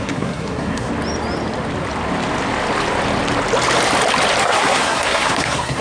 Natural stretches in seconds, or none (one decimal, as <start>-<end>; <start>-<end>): 0.9-4.4